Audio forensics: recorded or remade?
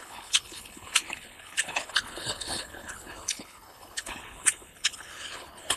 remade